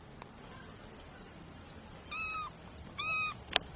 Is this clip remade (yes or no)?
no